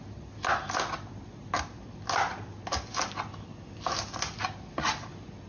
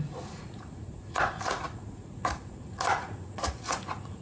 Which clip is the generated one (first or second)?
second